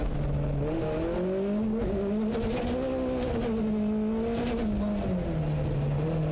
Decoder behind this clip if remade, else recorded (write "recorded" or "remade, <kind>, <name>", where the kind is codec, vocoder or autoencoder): recorded